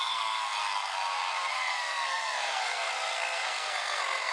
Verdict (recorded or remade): remade